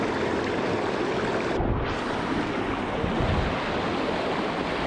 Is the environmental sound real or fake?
real